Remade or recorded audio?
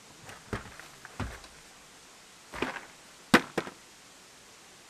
recorded